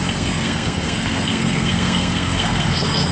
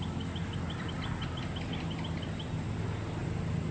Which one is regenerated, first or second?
first